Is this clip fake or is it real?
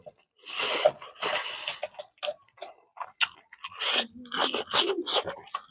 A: real